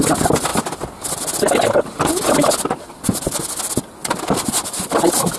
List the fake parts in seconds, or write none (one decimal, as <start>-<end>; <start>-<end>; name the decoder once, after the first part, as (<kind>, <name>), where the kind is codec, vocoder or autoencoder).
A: none